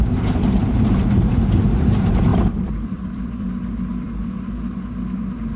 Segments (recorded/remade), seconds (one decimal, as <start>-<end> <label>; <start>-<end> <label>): 0.0-2.3 recorded; 2.3-4.5 remade; 4.5-5.6 recorded